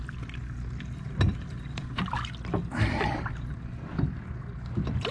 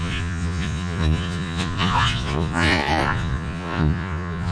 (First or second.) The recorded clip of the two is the first